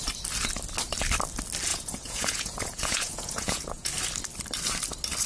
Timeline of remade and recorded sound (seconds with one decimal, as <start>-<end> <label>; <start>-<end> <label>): 0.0-1.7 recorded; 1.7-3.9 remade; 3.9-5.3 recorded